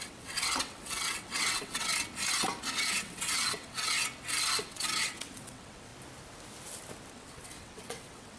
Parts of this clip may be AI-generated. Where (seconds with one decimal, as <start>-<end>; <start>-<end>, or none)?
0.0-1.9; 3.0-4.0; 4.6-5.9; 7.1-8.4